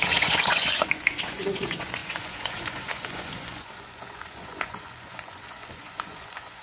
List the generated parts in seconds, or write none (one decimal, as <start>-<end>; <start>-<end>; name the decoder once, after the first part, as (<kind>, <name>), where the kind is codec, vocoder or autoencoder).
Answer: 0.0-6.6 (vocoder, Vocos)